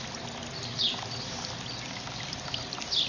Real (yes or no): yes